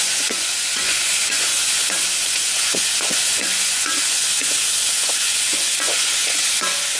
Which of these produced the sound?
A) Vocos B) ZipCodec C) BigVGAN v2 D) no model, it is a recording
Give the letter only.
A